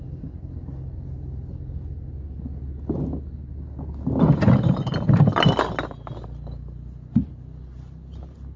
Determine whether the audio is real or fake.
real